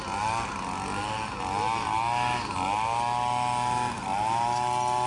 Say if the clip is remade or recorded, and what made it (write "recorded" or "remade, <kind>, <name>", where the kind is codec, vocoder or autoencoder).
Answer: recorded